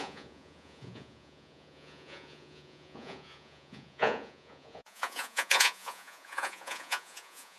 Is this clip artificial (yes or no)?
yes